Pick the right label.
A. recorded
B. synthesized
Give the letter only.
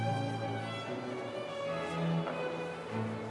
A